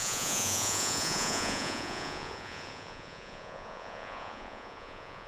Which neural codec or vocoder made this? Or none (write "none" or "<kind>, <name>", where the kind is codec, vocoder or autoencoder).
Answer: vocoder, Vocos